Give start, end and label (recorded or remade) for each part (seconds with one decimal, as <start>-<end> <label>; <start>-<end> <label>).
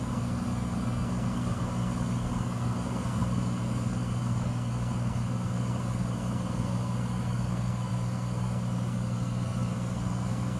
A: 0.0-10.6 remade